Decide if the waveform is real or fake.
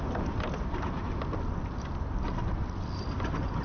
real